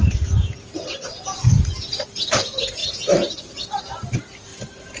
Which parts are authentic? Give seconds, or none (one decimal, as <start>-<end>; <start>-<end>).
2.8-3.4